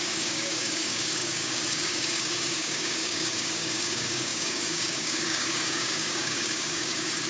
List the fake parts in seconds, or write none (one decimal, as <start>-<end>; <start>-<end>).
0.0-7.3